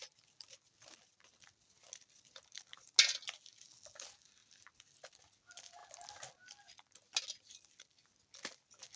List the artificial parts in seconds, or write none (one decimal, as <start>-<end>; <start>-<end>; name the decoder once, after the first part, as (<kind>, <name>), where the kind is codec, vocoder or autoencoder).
none